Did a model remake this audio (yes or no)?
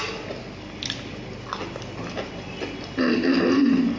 no